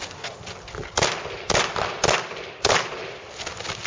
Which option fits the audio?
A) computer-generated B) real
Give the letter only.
B